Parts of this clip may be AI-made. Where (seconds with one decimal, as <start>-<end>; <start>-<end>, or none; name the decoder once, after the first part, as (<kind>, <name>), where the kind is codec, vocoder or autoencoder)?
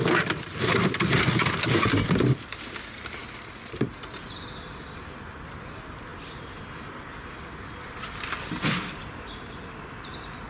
3.2-5.3 (vocoder, BigVGAN v2); 6.1-6.9